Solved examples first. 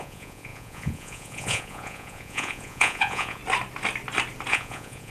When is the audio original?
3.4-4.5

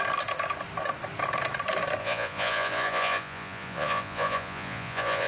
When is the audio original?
0.0-2.0

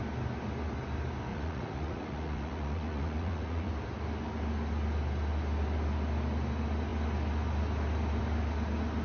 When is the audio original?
0.0-1.3; 3.7-9.0